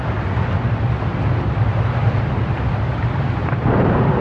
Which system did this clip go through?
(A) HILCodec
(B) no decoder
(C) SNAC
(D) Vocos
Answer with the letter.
B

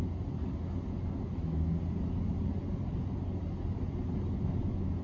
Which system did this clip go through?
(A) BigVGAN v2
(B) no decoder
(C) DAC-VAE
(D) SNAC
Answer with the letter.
B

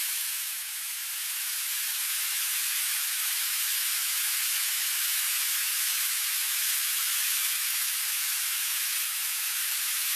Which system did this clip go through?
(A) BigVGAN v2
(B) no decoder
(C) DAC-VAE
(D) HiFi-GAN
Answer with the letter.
C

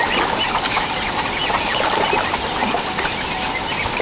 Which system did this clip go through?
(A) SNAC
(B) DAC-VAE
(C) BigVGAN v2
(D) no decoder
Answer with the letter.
D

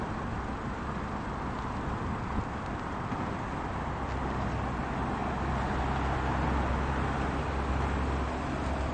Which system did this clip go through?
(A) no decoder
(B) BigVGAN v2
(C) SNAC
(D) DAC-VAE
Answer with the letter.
A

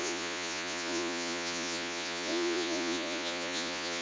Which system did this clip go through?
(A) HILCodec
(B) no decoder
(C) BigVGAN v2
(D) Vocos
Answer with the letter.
D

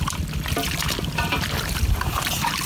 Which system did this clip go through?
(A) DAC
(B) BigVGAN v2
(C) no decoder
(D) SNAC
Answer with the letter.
C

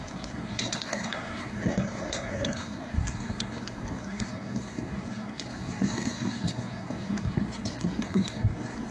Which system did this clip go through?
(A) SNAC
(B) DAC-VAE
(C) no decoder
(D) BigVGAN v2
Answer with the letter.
A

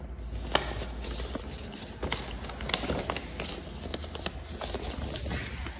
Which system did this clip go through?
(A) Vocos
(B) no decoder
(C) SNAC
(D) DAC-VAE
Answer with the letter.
B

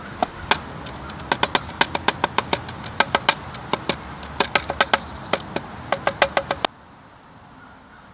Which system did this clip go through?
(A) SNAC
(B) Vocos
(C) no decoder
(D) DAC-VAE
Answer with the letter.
C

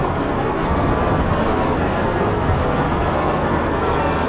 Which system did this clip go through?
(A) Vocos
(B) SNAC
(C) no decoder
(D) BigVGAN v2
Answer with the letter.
B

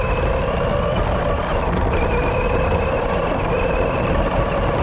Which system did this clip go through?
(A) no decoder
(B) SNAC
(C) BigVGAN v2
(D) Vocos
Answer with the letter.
A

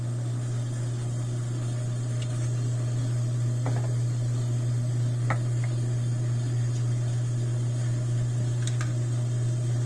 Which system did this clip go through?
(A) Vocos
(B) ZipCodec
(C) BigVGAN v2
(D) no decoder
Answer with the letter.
D